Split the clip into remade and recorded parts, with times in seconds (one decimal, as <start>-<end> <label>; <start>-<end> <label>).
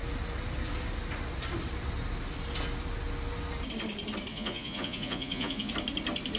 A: 0.0-4.3 recorded; 4.3-5.7 remade; 5.7-6.4 recorded